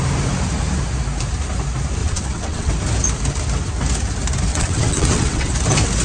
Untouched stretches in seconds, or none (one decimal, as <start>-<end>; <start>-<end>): 0.0-2.0; 2.7-4.5; 5.5-6.0